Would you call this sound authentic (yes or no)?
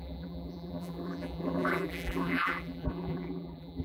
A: no